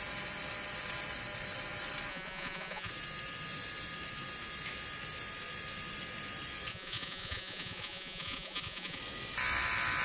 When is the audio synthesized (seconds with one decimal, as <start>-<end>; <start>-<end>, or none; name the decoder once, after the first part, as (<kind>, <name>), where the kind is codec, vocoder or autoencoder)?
2.1-2.9 (vocoder, Vocos); 6.7-9.0